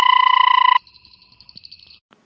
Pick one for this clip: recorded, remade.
remade